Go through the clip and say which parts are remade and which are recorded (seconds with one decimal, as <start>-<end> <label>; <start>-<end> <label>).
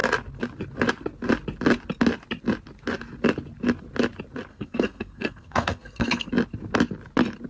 0.0-4.5 recorded; 4.5-6.3 remade; 6.3-7.5 recorded